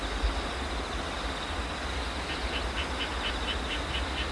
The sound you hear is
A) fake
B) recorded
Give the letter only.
B